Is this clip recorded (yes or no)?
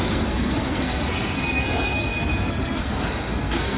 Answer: no